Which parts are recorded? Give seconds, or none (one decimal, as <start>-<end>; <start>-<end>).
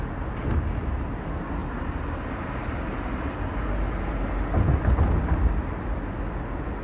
0.0-6.8